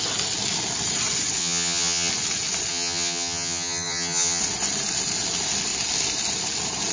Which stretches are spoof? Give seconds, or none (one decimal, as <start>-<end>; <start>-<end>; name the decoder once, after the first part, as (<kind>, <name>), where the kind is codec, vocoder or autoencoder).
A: 1.4-2.1 (vocoder, HiFi-GAN); 2.7-4.4